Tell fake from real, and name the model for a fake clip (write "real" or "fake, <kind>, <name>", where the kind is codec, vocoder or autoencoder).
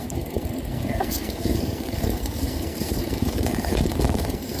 fake, codec, SNAC